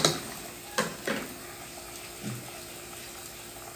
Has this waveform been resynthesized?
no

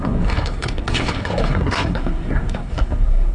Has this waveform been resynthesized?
yes